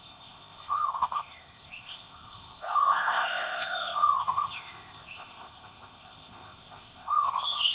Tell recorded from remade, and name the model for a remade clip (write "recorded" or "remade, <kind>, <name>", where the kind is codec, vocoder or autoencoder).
remade, codec, ZipCodec